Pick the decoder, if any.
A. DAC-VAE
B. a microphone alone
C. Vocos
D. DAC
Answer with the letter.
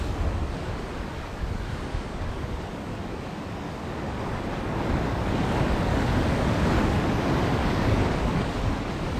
D